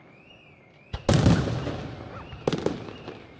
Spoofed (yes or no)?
no